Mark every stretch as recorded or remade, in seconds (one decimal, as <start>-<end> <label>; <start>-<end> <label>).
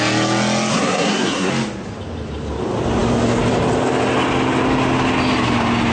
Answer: 0.0-0.7 recorded; 0.7-1.5 remade; 1.5-5.9 recorded